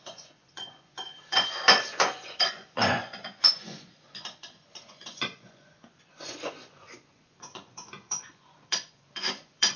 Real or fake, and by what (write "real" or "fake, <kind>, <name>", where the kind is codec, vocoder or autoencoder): fake, vocoder, Vocos